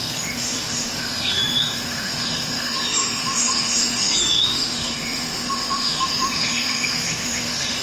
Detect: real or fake fake